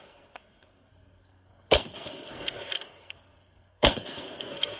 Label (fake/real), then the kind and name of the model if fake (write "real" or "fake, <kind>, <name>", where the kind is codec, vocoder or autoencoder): fake, codec, SNAC